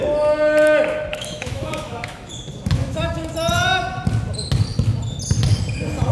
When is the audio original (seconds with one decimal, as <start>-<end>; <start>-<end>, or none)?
0.0-1.1; 2.3-2.8; 3.3-6.1